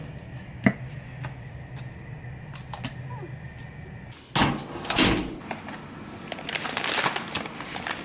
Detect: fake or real real